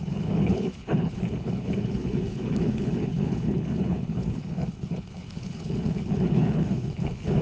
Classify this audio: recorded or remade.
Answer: remade